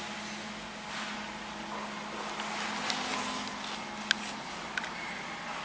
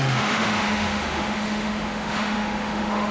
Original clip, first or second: first